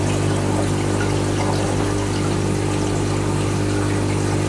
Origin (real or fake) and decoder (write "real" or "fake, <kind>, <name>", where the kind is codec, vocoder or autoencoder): real